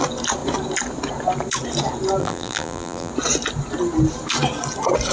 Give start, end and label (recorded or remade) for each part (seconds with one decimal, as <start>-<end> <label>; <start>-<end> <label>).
0.0-2.2 recorded; 2.2-3.1 remade; 3.1-5.1 recorded